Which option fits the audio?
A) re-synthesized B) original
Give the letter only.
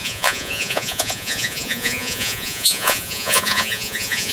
A